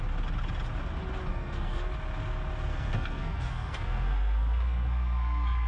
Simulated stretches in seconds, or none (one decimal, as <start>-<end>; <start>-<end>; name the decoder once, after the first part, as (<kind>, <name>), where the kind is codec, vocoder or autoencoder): 1.3-1.9 (codec, SNAC); 2.7-5.7